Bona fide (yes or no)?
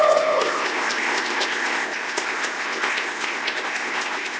no